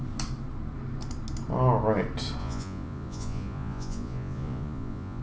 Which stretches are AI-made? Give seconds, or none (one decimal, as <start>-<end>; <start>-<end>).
2.4-5.2